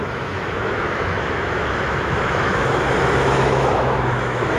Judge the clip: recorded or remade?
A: remade